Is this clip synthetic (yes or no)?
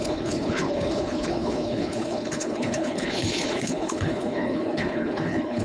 yes